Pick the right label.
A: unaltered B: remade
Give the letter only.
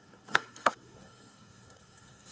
B